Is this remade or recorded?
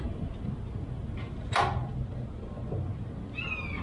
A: recorded